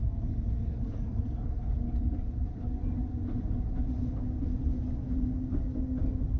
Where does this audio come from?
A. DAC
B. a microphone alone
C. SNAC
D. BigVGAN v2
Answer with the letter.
B